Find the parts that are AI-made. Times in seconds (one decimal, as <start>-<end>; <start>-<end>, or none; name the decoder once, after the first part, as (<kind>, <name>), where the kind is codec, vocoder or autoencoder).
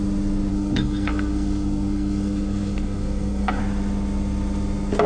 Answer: 0.5-3.6 (codec, SNAC)